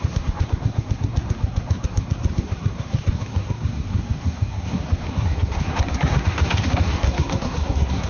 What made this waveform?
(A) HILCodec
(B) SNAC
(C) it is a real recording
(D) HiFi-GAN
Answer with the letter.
B